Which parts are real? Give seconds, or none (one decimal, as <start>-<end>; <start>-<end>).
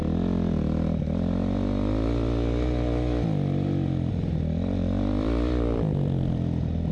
0.0-4.1